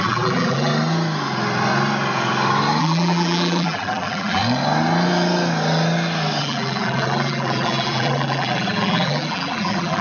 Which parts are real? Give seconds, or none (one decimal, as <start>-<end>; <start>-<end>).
0.7-2.8; 4.4-6.4